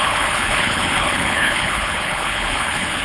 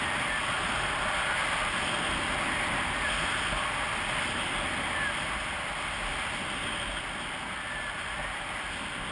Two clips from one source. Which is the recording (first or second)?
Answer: second